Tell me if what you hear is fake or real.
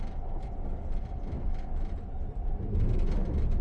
real